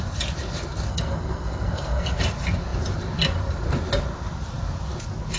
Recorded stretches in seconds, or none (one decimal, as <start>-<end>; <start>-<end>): 0.0-0.9; 2.2-5.4